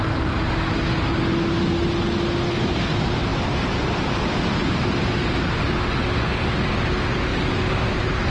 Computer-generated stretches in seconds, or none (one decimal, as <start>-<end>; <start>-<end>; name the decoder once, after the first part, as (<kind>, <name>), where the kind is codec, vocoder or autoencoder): none

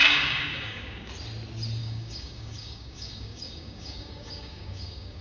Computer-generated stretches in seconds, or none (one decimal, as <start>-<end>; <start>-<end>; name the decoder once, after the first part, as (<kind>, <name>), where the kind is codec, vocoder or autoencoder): 0.0-1.1 (codec, DAC); 1.8-5.2

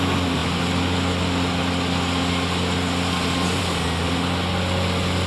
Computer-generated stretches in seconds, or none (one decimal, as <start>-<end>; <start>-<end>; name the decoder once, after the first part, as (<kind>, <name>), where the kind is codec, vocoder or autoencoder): none

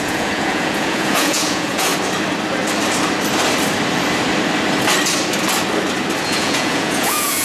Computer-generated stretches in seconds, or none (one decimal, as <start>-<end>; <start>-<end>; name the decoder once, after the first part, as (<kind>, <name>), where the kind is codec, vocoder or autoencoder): 0.0-1.9 (vocoder, Vocos); 6.2-7.4

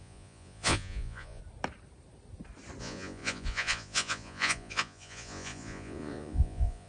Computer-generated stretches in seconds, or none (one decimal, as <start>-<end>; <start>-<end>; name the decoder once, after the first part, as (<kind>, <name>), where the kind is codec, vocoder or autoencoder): 0.0-1.4 (vocoder, Vocos); 2.8-6.9

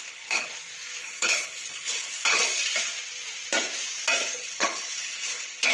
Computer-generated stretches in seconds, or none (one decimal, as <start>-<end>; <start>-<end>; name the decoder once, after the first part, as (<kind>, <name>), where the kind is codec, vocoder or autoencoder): 0.0-0.5 (codec, HILCodec); 1.0-2.4; 4.4-5.7

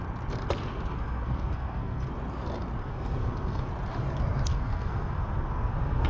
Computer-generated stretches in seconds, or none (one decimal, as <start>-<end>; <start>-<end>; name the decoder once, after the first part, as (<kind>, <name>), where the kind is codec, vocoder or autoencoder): 0.9-2.1 (codec, SNAC); 2.8-3.7; 4.5-6.1